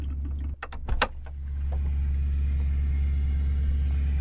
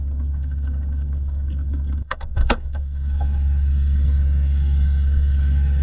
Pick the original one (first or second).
first